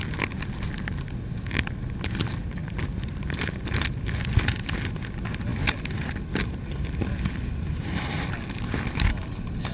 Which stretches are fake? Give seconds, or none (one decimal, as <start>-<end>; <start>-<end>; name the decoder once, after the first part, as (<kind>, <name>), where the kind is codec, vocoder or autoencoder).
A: 2.6-3.8 (vocoder, BigVGAN v2); 5.5-9.7